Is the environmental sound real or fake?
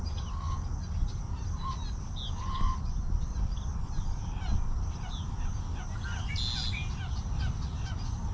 real